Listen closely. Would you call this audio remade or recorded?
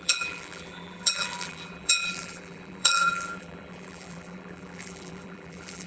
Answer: remade